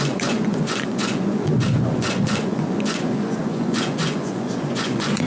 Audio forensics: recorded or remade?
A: remade